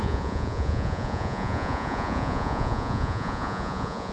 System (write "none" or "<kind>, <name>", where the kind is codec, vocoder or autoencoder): vocoder, Vocos